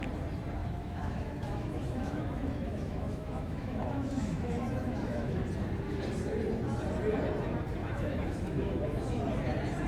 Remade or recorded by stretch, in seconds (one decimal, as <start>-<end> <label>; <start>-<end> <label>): 0.0-0.6 recorded; 0.6-5.4 remade; 5.4-7.8 recorded; 7.8-9.2 remade; 9.2-9.9 recorded